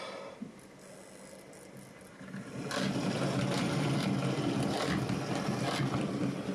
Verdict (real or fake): real